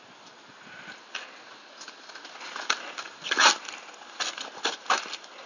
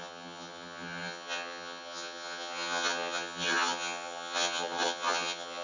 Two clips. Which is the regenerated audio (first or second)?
second